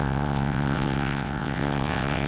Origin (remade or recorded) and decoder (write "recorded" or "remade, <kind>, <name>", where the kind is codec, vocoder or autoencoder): remade, vocoder, WaveNeXt